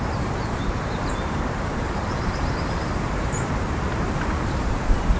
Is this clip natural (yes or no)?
no